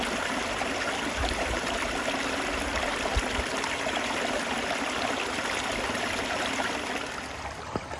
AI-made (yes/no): no